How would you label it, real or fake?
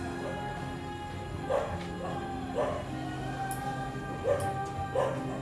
real